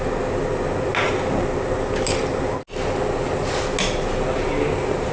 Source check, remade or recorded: recorded